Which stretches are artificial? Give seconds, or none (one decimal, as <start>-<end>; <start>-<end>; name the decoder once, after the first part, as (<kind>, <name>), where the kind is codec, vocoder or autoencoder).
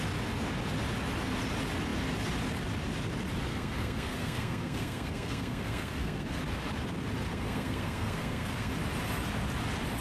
3.5-6.4 (codec, SNAC); 7.3-8.7